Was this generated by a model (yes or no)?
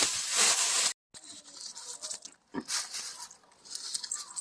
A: no